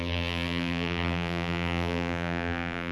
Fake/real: fake